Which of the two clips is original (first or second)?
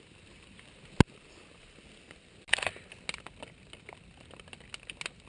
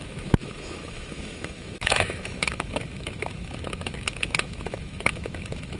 first